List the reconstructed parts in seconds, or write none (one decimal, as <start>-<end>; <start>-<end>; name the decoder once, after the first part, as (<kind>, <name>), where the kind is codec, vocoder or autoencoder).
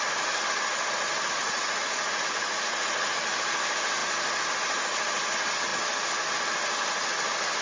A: 1.4-2.9 (vocoder, Vocos)